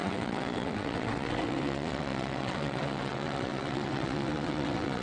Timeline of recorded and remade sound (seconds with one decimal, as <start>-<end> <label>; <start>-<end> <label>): 0.0-5.0 remade